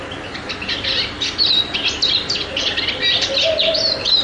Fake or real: real